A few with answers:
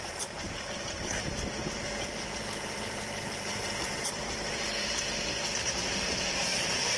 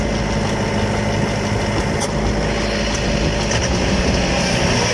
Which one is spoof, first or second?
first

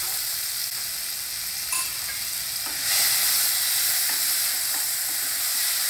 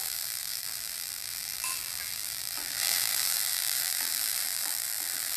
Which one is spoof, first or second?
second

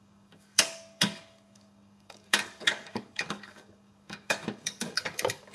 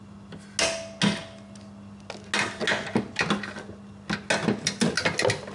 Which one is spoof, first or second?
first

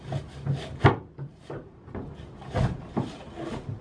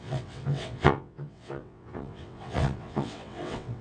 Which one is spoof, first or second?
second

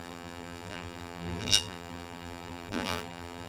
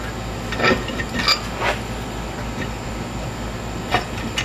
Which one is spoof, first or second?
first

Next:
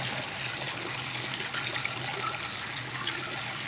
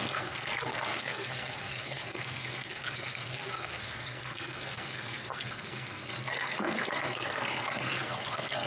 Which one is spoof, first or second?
second